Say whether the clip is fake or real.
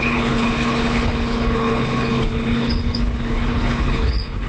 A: fake